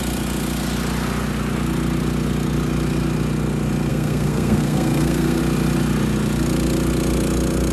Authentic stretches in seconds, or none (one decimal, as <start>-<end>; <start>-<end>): 0.0-3.9; 5.4-7.7